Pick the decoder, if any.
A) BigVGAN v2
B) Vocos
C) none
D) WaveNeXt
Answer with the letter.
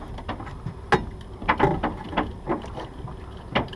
C